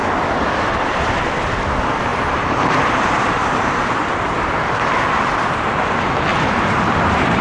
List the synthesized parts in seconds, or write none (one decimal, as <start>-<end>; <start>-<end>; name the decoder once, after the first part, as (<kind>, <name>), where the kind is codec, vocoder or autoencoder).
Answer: 2.1-4.5 (vocoder, BigVGAN v2); 6.3-7.4